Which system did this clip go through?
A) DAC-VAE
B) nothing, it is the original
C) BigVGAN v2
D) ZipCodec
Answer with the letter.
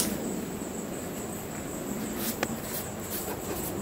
B